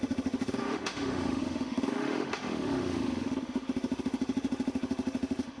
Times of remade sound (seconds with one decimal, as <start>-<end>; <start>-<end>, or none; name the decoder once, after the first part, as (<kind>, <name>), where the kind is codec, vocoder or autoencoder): 0.0-5.6 (autoencoder, DAC-VAE)